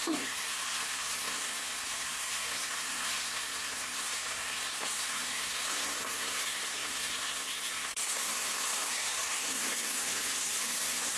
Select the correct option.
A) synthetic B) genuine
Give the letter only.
A